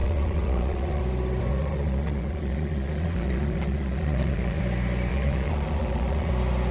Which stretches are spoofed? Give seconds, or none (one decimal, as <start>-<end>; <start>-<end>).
0.0-1.0; 1.5-4.6; 5.1-6.3